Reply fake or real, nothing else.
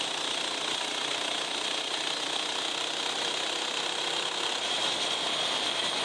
real